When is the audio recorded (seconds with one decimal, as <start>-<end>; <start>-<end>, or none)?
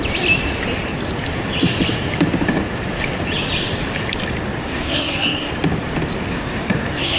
0.0-4.6; 5.5-6.3